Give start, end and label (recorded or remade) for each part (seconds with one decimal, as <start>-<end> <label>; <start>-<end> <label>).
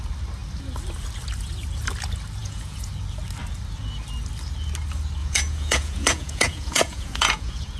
0.0-2.4 recorded; 2.4-2.9 remade; 2.9-5.2 recorded; 5.2-7.8 remade